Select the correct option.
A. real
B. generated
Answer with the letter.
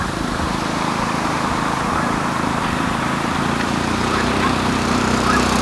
B